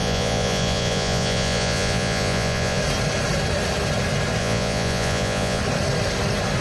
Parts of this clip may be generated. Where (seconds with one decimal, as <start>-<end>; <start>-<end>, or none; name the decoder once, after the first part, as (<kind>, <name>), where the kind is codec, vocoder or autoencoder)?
0.0-2.8 (vocoder, Vocos); 4.4-5.6